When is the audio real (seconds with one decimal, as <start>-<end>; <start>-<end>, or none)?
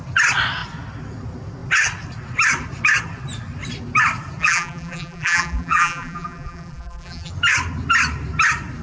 0.0-4.4; 7.3-8.8